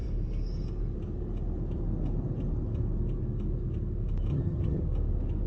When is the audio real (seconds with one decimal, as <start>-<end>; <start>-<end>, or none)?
0.0-4.3; 4.8-5.5